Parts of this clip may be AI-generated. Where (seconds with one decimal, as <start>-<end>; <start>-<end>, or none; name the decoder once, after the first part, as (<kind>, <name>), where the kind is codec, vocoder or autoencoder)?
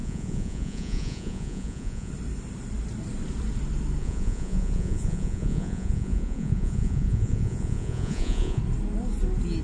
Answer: 0.0-2.1 (vocoder, Vocos); 4.0-8.6